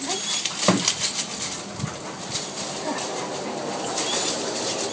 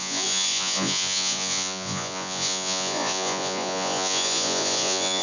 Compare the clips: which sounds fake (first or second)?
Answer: second